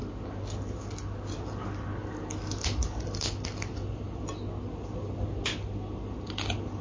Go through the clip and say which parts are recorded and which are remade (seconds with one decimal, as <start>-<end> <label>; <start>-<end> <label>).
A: 0.0-6.8 recorded